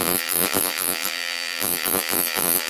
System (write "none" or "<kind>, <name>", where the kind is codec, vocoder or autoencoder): vocoder, BigVGAN v2